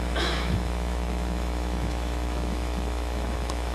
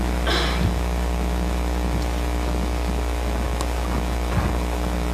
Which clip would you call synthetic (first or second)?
first